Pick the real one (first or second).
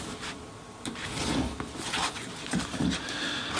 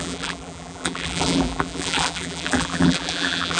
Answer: first